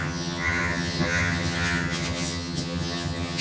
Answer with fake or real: fake